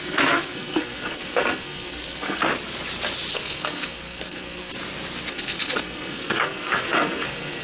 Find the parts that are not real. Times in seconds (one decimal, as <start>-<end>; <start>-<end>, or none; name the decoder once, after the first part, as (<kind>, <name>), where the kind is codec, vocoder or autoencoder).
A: 0.0-2.5 (codec, SNAC); 3.3-4.7; 5.3-7.6